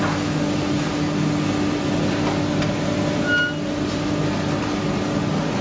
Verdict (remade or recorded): recorded